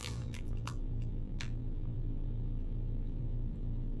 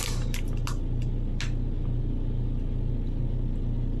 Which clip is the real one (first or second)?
second